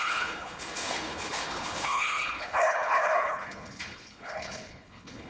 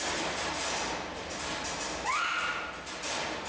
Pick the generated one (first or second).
first